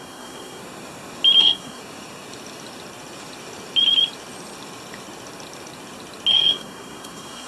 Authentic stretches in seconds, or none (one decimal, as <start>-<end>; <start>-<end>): 0.6-1.4; 1.8-6.3